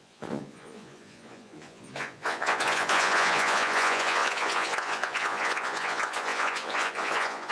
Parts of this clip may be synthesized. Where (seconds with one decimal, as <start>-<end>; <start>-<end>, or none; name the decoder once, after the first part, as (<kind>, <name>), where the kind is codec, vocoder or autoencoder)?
0.0-7.5 (vocoder, Vocos)